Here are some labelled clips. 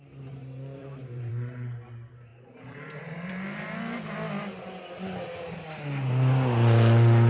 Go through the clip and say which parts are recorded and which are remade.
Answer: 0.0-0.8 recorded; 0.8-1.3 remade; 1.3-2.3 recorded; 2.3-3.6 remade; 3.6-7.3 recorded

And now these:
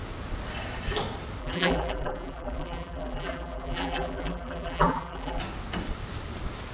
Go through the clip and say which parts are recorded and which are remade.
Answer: 0.0-1.4 recorded; 1.4-5.4 remade; 5.4-6.7 recorded

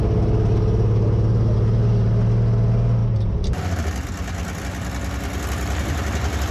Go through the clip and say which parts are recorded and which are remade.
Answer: 0.0-6.5 recorded

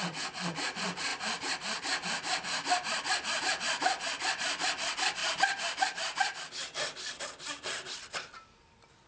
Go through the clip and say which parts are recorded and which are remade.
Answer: 0.0-5.2 recorded; 5.2-7.2 remade; 7.2-9.1 recorded

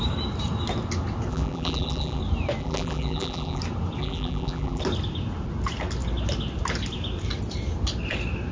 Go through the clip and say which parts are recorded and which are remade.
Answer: 0.0-1.3 recorded; 1.3-2.2 remade; 2.2-2.6 recorded; 2.6-3.6 remade; 3.6-4.0 recorded; 4.0-4.8 remade; 4.8-8.5 recorded

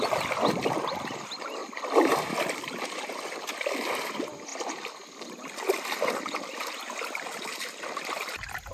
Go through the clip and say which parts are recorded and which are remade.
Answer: 0.0-8.7 recorded